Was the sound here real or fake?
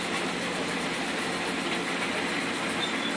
real